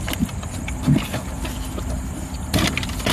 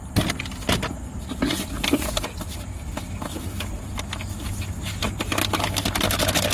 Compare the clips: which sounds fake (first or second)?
first